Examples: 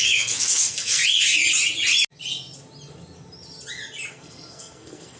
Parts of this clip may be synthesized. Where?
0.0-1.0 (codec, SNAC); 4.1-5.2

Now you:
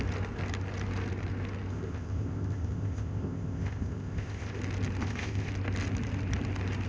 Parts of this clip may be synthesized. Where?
1.7-4.6 (codec, ZipCodec); 5.0-5.5

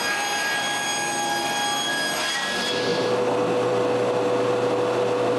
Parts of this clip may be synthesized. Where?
none

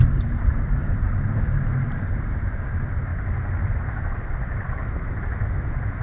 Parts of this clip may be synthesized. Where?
0.8-2.1 (vocoder, BigVGAN v2); 3.1-5.2